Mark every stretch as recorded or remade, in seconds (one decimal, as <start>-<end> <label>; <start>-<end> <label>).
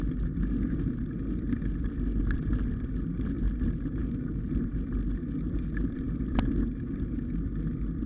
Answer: 0.0-4.0 recorded; 4.0-4.5 remade; 4.5-8.1 recorded